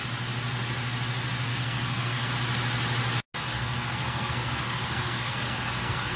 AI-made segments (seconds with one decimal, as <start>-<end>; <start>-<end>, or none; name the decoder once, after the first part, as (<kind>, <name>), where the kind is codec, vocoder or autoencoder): 1.5-2.3 (codec, SNAC); 3.5-6.2